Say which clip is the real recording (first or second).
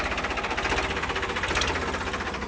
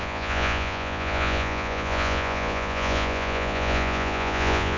first